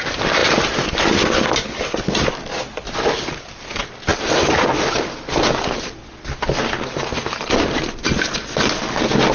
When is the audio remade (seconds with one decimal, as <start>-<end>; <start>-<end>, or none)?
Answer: none